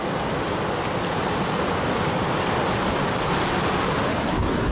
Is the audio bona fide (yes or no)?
yes